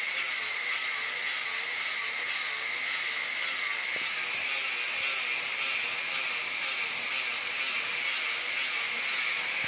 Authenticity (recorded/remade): recorded